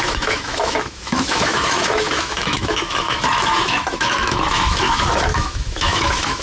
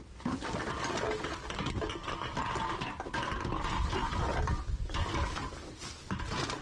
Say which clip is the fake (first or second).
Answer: first